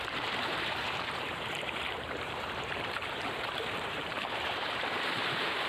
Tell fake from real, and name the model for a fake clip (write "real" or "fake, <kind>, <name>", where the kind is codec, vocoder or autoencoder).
fake, vocoder, BigVGAN v2